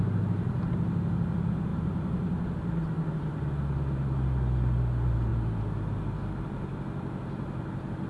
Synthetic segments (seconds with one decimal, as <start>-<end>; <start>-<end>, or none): none